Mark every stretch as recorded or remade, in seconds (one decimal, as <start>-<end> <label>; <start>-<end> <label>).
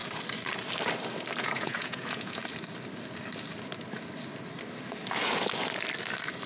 0.0-1.4 recorded; 1.4-2.4 remade; 2.4-6.5 recorded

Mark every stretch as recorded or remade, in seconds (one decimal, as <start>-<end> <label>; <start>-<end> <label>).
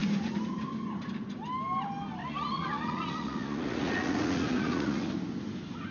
0.0-2.2 recorded; 2.2-5.1 remade; 5.1-5.9 recorded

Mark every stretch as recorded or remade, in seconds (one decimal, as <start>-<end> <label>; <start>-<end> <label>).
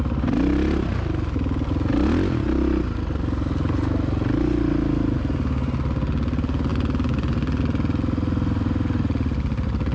0.0-9.9 recorded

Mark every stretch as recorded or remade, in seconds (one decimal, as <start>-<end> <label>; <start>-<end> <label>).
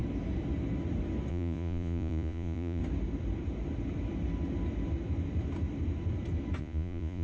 0.0-1.3 recorded; 1.3-2.8 remade; 2.8-6.6 recorded; 6.6-7.2 remade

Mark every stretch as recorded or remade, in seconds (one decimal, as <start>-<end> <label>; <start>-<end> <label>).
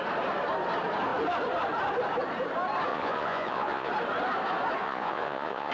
0.0-2.9 recorded; 2.9-3.9 remade; 3.9-4.8 recorded; 4.8-5.7 remade